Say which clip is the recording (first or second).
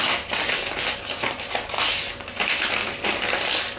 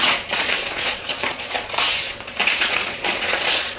first